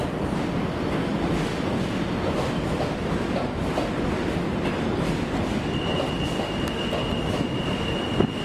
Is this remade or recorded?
recorded